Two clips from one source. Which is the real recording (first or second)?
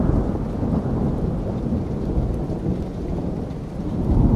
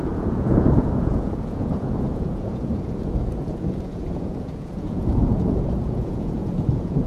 first